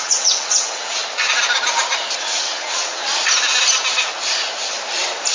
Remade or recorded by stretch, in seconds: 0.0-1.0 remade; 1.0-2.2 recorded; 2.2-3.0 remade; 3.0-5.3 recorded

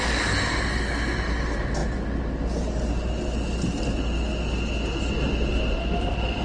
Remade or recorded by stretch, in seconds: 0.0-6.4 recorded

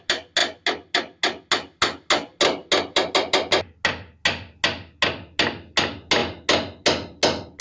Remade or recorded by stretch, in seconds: 0.0-7.6 recorded